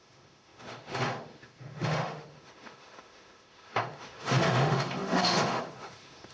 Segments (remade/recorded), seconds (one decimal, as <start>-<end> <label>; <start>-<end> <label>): 0.0-6.3 remade